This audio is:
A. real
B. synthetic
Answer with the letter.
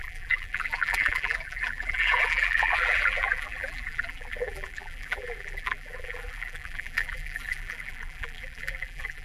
B